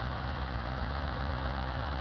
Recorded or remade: remade